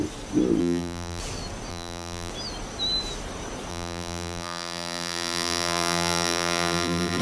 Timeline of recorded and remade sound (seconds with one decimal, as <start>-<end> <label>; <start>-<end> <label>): 0.0-0.6 recorded; 0.6-1.2 remade; 1.2-1.7 recorded; 1.7-2.3 remade; 2.3-3.7 recorded; 3.7-7.2 remade